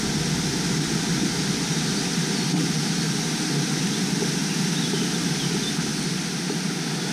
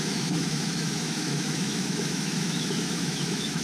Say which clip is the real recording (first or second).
first